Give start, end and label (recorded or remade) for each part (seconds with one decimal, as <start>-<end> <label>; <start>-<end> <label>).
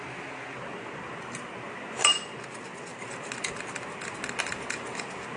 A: 0.0-5.4 recorded